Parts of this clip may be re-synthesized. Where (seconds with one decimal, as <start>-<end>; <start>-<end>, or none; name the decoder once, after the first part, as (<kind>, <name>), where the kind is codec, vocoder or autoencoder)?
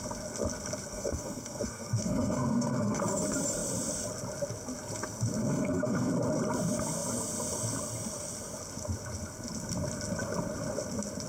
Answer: 0.9-3.0 (codec, SNAC); 5.4-6.1